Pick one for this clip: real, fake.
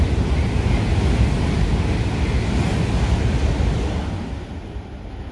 real